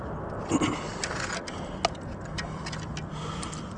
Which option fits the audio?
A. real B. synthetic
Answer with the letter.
A